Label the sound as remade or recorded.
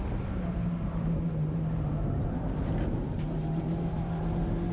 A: remade